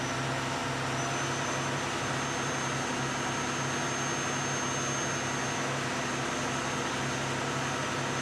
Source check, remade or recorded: recorded